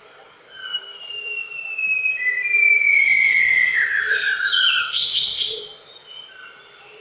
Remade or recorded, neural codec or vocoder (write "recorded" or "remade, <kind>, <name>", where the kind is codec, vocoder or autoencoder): recorded